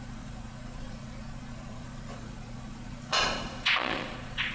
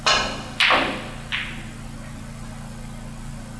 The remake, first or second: first